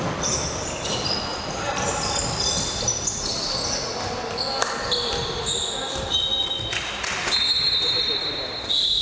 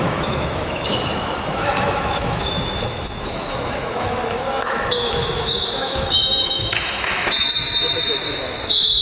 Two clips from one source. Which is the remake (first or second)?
second